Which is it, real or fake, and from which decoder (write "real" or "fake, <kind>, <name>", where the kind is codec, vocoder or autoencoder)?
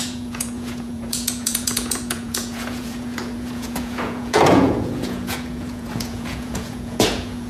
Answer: fake, vocoder, Vocos